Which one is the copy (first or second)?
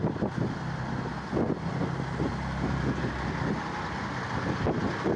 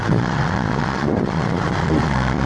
second